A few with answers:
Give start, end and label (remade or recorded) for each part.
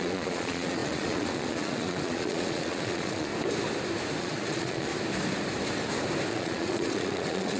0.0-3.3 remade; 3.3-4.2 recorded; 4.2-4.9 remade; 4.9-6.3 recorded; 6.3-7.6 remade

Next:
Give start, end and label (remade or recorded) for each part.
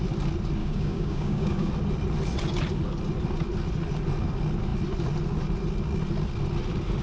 0.0-0.6 recorded; 0.6-1.7 remade; 1.7-7.0 recorded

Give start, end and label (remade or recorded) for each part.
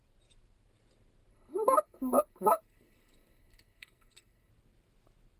0.0-1.3 recorded; 1.3-4.5 remade; 4.5-5.4 recorded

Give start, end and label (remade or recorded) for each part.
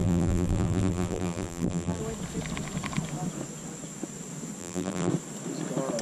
0.0-2.0 remade; 2.0-4.6 recorded; 4.6-5.1 remade; 5.1-6.0 recorded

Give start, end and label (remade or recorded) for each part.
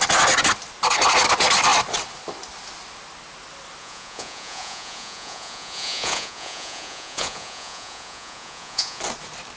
0.0-3.8 recorded; 3.8-9.0 remade; 9.0-9.6 recorded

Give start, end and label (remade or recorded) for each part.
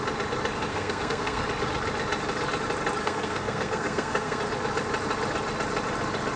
0.0-0.7 recorded; 0.7-1.4 remade; 1.4-3.0 recorded; 3.0-4.4 remade; 4.4-6.4 recorded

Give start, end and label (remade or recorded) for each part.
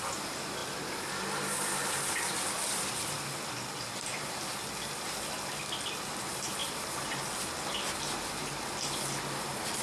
0.0-9.8 recorded